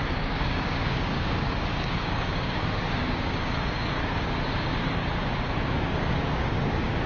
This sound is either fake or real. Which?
fake